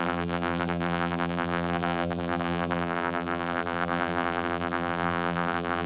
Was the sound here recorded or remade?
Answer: remade